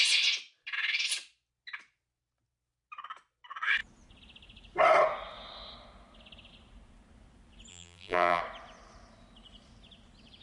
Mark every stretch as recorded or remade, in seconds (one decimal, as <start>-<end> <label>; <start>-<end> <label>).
0.0-7.7 recorded; 7.7-8.4 remade; 8.4-10.4 recorded